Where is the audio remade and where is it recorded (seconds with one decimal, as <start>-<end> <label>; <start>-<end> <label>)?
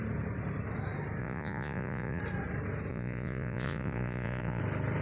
0.0-1.2 recorded; 1.2-2.2 remade; 2.2-2.9 recorded; 2.9-4.6 remade; 4.6-5.0 recorded